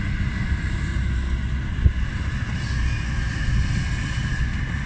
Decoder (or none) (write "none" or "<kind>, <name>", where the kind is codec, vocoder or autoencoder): none